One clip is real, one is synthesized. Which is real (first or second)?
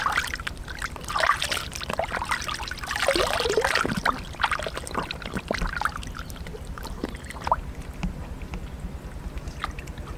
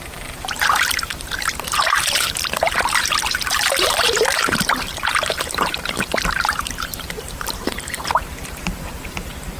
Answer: first